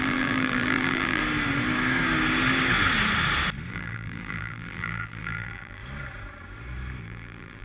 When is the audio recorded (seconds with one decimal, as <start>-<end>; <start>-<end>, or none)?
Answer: 1.2-3.7; 5.8-7.0